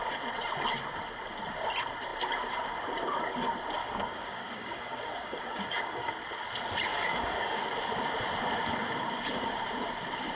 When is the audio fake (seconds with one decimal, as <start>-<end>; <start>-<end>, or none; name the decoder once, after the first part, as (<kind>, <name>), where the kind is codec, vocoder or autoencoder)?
3.8-6.1 (codec, DAC); 6.9-7.6